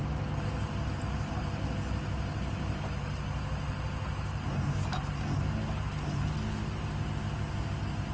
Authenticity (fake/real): real